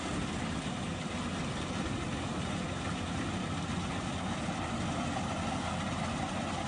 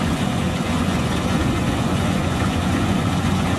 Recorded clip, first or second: first